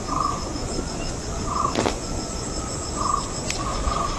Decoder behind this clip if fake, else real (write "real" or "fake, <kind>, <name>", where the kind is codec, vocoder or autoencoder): fake, vocoder, Vocos